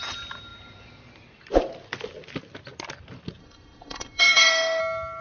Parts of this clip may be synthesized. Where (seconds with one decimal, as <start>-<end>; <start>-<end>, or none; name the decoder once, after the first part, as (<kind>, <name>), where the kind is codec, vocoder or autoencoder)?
3.4-4.8 (autoencoder, DAC-VAE)